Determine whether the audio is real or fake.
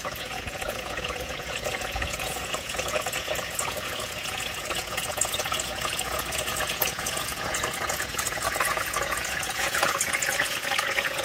fake